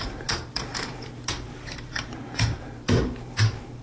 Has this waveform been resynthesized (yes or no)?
yes